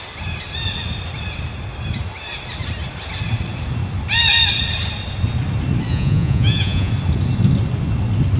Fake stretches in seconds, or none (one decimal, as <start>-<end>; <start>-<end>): 5.9-6.9